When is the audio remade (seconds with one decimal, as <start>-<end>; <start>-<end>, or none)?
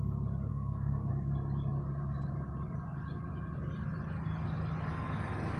0.5-1.1